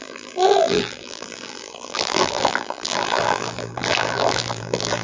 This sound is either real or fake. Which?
fake